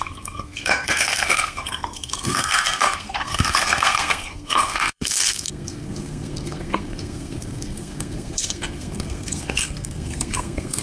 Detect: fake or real fake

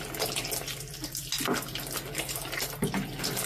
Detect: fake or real real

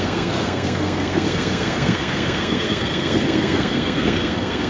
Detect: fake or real fake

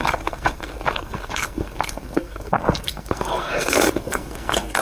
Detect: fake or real fake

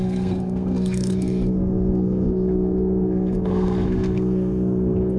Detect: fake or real fake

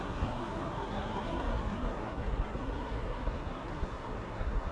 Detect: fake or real fake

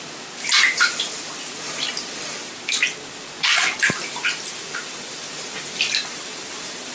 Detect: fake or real real